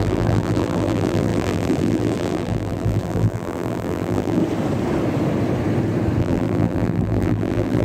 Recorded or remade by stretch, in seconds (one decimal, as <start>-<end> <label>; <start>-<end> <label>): 0.0-4.4 remade; 4.4-6.2 recorded; 6.2-7.8 remade